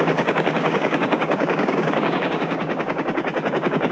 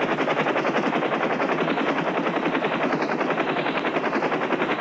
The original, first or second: second